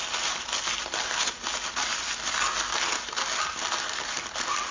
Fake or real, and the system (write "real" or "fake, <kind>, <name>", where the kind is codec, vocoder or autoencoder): real